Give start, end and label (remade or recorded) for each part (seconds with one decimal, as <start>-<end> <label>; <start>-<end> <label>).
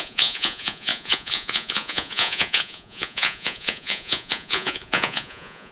0.0-5.7 remade